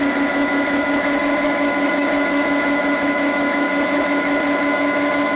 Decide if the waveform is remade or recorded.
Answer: remade